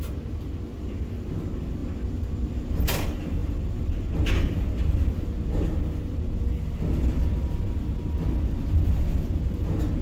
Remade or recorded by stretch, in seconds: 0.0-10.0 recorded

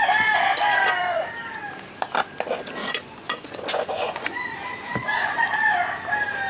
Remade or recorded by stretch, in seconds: 0.0-2.8 recorded; 2.8-5.4 remade; 5.4-6.5 recorded

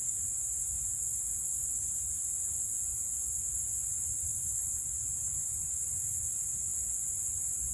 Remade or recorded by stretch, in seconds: 0.0-2.4 recorded; 2.4-3.8 remade; 3.8-6.7 recorded; 6.7-7.3 remade; 7.3-7.7 recorded

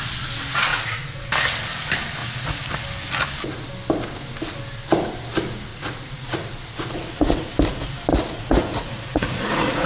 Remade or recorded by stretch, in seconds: 0.0-0.7 recorded; 0.7-1.3 remade; 1.3-2.2 recorded; 2.2-2.7 remade; 2.7-5.7 recorded; 5.7-7.5 remade; 7.5-8.1 recorded; 8.1-9.9 remade

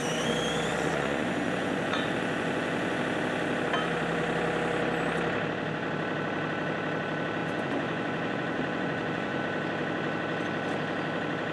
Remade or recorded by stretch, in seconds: 0.0-0.7 recorded; 0.7-3.0 remade; 3.0-7.4 recorded; 7.4-9.4 remade; 9.4-11.5 recorded

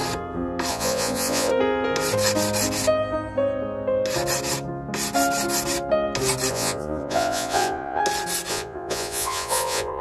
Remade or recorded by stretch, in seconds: 0.0-0.7 recorded; 0.7-1.5 remade; 1.5-6.5 recorded; 6.5-8.0 remade; 8.0-8.5 recorded; 8.5-10.0 remade

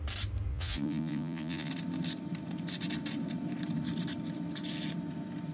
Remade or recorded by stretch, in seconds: 0.0-0.5 recorded; 0.5-1.7 remade; 1.7-5.5 recorded